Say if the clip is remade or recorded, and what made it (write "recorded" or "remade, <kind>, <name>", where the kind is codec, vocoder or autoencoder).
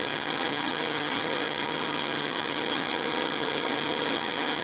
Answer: remade, vocoder, HiFi-GAN